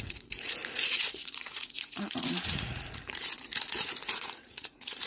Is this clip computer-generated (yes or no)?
yes